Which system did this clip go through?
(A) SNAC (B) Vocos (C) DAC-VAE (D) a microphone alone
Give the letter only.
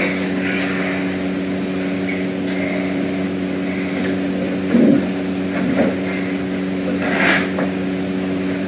D